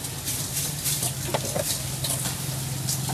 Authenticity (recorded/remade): recorded